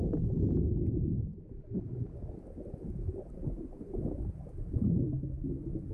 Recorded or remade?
recorded